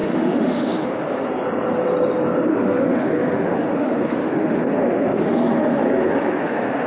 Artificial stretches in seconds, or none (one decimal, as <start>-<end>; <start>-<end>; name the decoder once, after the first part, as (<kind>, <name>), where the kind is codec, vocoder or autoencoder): 0.0-1.3 (autoencoder, DAC-VAE); 2.5-6.9